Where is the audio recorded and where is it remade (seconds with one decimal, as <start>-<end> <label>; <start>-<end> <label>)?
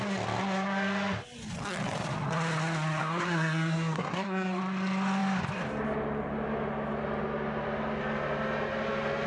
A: 0.0-3.0 recorded; 3.0-4.6 remade; 4.6-9.3 recorded